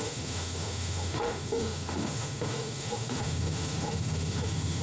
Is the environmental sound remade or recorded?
remade